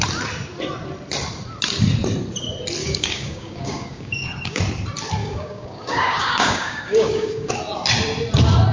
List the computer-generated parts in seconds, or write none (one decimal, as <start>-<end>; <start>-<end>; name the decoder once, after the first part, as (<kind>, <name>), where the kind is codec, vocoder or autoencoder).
2.8-4.6 (codec, DAC); 5.2-7.5